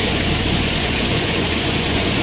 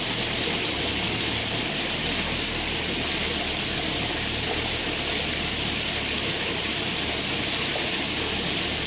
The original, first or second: second